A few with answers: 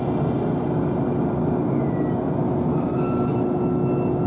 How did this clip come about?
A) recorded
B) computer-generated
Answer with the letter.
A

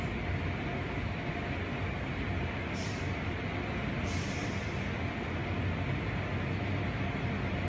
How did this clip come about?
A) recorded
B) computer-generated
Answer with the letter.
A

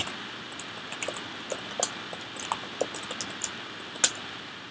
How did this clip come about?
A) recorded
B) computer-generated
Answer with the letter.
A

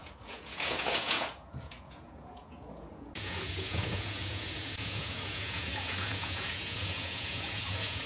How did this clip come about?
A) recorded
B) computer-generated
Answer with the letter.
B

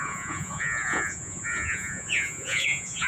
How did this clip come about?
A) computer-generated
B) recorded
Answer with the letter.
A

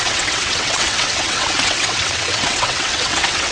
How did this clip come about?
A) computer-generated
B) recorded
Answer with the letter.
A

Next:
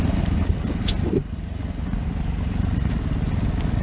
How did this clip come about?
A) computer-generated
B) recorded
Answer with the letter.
B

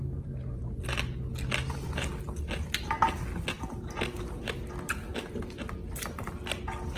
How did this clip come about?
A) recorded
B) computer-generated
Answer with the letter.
A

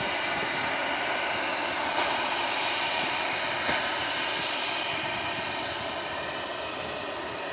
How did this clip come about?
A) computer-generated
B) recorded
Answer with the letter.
B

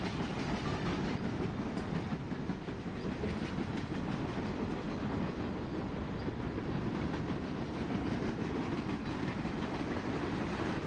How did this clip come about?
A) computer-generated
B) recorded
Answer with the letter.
B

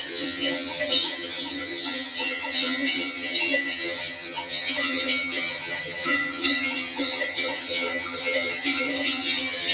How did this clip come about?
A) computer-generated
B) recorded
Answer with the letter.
A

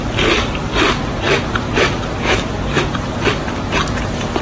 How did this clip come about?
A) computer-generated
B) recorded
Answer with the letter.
B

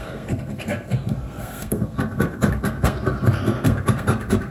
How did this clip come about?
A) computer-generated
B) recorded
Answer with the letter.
A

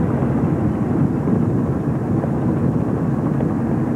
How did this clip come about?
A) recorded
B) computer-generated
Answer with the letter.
A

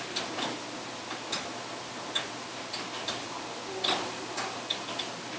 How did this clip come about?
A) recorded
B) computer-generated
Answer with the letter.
A